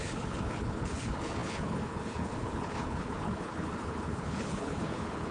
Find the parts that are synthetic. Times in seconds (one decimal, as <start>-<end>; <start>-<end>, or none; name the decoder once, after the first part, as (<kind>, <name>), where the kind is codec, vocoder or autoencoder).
0.0-5.3 (codec, HILCodec)